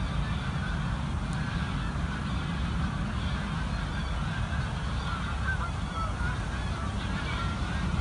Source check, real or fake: real